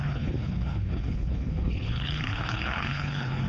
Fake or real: fake